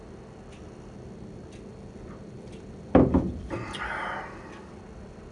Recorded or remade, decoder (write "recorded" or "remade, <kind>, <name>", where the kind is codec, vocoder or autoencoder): recorded